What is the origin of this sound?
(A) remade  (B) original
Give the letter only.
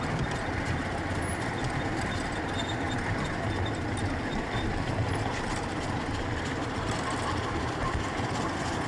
A